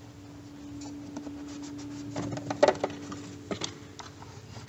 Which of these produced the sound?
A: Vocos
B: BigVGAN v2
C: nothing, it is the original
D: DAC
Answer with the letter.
C